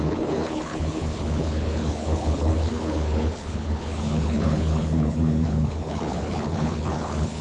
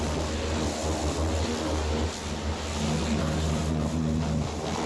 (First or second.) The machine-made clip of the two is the first